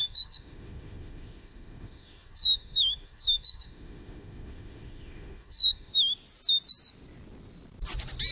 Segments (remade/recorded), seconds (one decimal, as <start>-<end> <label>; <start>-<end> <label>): 0.0-5.9 remade; 5.9-8.3 recorded